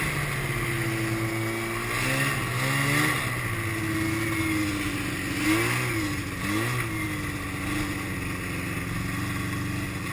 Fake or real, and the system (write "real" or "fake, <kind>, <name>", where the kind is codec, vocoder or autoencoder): real